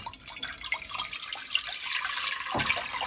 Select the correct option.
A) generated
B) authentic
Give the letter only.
B